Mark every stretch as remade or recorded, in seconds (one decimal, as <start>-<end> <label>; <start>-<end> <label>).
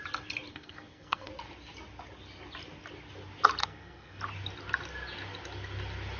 0.0-0.5 recorded; 0.5-1.3 remade; 1.3-3.6 recorded; 3.6-4.2 remade; 4.2-6.2 recorded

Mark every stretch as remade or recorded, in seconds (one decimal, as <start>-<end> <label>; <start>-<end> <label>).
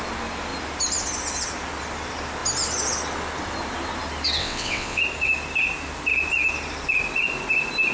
0.0-4.4 recorded; 4.4-5.0 remade; 5.0-7.9 recorded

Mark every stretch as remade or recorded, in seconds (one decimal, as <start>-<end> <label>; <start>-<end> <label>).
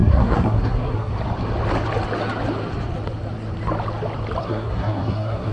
0.0-1.1 remade; 1.1-4.4 recorded; 4.4-5.5 remade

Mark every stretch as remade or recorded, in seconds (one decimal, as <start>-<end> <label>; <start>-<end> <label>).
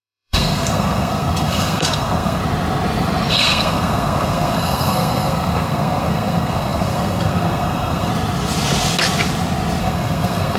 0.0-2.4 remade; 2.4-3.3 recorded; 3.3-8.1 remade; 8.1-9.8 recorded; 9.8-10.6 remade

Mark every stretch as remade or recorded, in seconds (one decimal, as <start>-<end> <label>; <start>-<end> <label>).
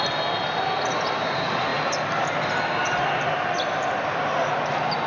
0.0-5.1 recorded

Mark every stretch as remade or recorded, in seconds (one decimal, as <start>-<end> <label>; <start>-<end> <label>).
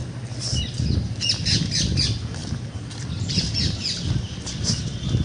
0.0-5.2 recorded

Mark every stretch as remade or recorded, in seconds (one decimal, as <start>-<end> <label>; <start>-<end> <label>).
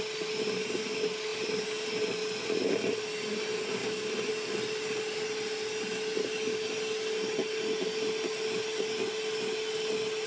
0.0-10.3 recorded